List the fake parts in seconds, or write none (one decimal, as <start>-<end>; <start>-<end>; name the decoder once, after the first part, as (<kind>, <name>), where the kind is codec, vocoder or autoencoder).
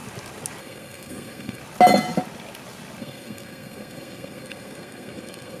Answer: 0.6-1.6 (codec, SNAC); 3.0-5.6